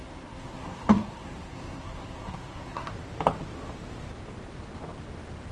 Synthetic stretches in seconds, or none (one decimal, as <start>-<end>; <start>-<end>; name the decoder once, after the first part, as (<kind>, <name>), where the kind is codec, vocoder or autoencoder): 0.0-2.9 (codec, SNAC)